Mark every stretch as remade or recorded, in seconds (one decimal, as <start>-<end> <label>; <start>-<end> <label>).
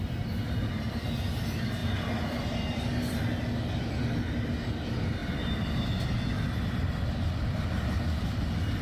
0.0-8.8 recorded